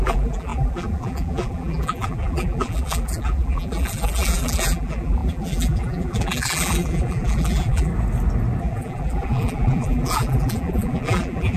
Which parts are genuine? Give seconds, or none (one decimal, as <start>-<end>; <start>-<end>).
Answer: 7.9-8.6